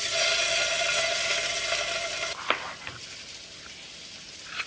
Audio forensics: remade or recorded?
recorded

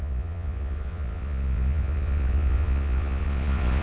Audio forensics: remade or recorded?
remade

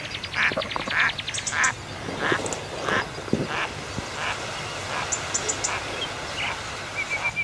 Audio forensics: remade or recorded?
recorded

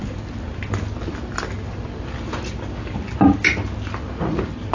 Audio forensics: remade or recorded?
recorded